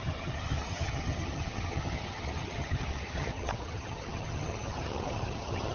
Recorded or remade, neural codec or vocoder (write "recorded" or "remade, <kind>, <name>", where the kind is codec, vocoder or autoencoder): remade, vocoder, HiFi-GAN